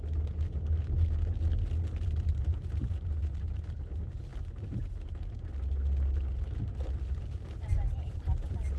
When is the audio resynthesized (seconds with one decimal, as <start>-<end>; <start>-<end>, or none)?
none